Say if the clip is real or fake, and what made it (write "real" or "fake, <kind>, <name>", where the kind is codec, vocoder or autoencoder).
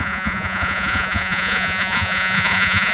fake, vocoder, Vocos